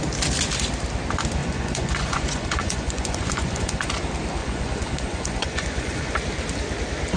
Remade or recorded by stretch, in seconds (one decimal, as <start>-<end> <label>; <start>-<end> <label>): 0.0-1.4 recorded; 1.4-3.9 remade; 3.9-4.4 recorded; 4.4-6.1 remade; 6.1-7.2 recorded